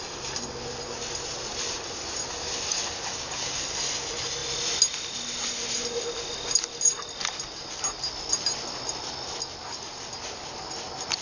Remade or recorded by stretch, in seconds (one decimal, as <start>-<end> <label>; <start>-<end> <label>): 0.0-3.1 recorded; 3.1-3.6 remade; 3.6-11.2 recorded